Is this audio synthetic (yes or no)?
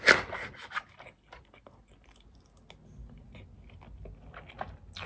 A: no